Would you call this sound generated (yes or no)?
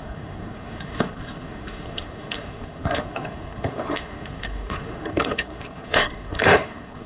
yes